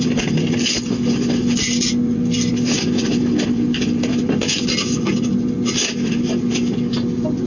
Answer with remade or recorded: recorded